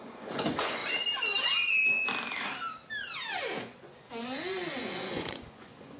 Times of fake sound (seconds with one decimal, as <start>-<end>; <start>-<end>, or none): 0.0-0.8; 3.6-6.0